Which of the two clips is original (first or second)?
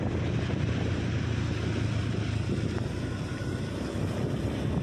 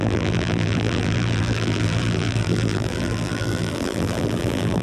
first